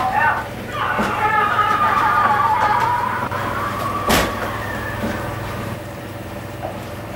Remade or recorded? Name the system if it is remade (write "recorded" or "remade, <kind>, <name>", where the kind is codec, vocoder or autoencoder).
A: remade, vocoder, BigVGAN v2